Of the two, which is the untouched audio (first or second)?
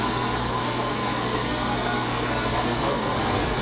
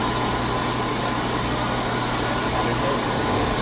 second